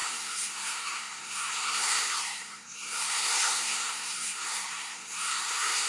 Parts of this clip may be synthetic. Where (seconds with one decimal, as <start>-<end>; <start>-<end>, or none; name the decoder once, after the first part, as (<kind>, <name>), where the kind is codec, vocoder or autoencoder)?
0.0-5.9 (codec, SNAC)